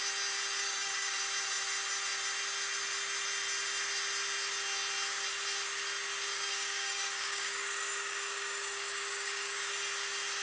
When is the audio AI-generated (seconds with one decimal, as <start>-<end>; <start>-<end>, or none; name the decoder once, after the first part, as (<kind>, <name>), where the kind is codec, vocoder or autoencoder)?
0.6-1.2 (codec, DAC); 6.3-9.7